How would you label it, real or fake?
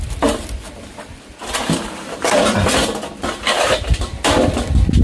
fake